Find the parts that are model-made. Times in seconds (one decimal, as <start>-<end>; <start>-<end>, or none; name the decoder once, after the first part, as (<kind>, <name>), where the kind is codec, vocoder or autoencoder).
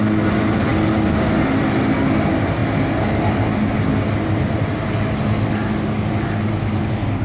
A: none